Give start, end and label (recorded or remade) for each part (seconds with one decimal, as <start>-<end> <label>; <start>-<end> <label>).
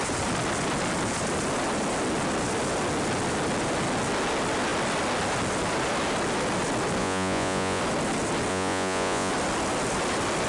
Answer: 0.0-7.0 recorded; 7.0-7.8 remade; 7.8-8.5 recorded; 8.5-9.3 remade; 9.3-10.5 recorded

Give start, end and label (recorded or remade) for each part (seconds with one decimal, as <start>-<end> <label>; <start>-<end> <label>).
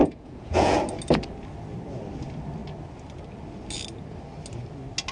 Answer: 0.0-0.8 remade; 0.8-5.1 recorded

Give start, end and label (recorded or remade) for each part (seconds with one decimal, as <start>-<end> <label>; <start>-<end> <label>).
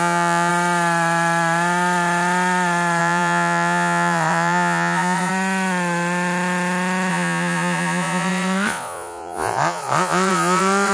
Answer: 0.0-0.5 remade; 0.5-3.0 recorded; 3.0-5.3 remade; 5.3-7.1 recorded; 7.1-10.9 remade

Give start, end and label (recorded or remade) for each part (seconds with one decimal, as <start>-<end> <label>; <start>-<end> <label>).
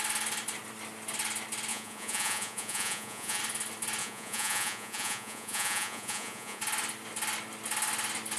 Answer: 0.0-1.7 recorded; 1.7-3.4 remade; 3.4-4.0 recorded; 4.0-6.6 remade; 6.6-8.4 recorded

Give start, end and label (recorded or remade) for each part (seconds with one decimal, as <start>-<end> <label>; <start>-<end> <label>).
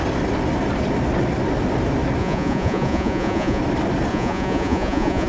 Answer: 0.0-2.2 recorded; 2.2-3.6 remade; 3.6-4.1 recorded; 4.1-5.3 remade